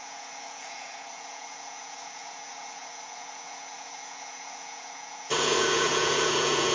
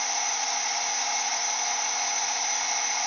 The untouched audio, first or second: second